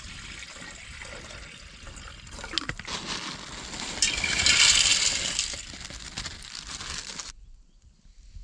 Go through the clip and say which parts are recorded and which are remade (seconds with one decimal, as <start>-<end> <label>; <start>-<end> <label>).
0.0-8.4 recorded